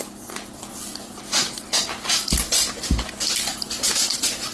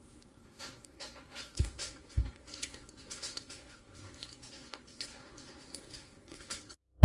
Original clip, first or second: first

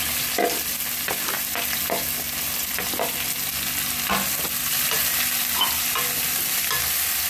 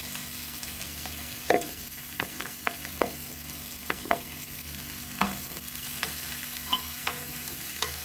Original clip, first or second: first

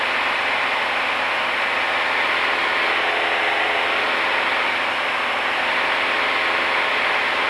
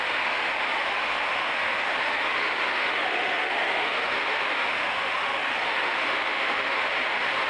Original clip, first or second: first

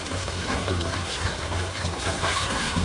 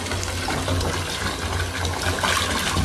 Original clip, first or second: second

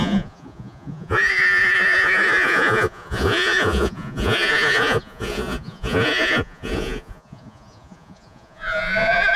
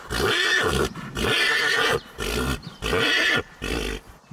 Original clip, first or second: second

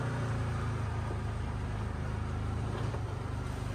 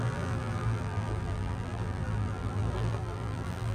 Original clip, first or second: first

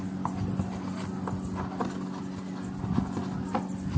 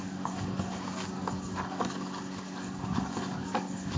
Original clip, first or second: first